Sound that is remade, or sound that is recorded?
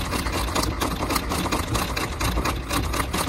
recorded